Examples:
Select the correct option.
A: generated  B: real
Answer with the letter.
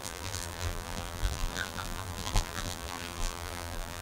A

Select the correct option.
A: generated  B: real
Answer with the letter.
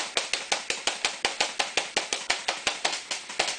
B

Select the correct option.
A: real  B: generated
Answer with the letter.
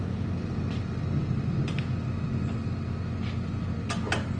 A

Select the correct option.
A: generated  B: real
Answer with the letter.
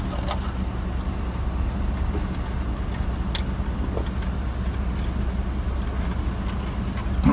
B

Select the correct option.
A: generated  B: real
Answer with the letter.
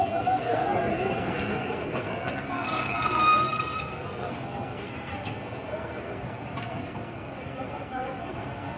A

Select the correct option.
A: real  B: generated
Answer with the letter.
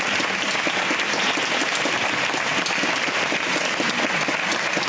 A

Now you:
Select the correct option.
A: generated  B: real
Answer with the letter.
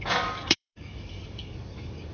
A